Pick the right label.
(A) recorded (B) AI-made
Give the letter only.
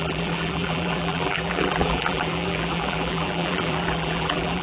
B